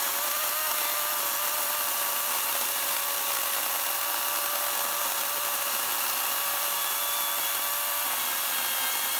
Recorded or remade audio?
recorded